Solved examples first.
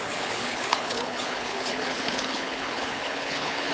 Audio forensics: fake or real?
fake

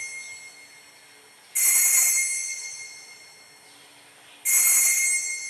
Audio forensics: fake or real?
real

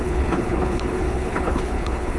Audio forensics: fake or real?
fake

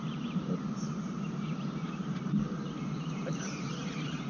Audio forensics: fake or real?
fake